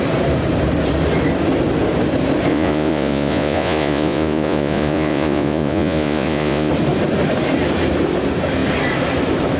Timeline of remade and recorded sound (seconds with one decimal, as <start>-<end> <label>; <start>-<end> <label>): 0.0-2.5 recorded; 2.5-6.7 remade; 6.7-9.6 recorded